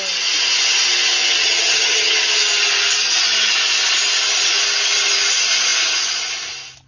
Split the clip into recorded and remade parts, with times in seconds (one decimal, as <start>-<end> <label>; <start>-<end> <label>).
0.0-1.4 recorded; 1.4-2.1 remade; 2.1-6.9 recorded

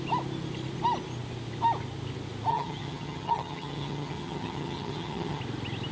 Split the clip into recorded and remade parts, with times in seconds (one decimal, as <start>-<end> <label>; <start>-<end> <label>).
0.0-2.5 recorded; 2.5-5.4 remade; 5.4-5.9 recorded

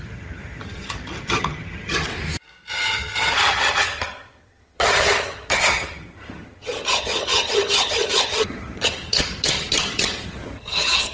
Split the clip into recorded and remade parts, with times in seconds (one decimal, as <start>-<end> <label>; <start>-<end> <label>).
0.0-2.1 remade; 2.1-2.7 recorded; 2.7-11.1 remade